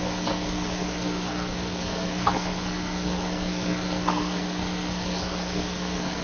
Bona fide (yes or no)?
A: no